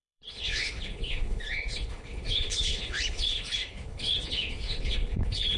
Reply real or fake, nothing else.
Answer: fake